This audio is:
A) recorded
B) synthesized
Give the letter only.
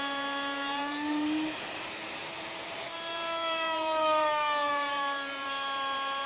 B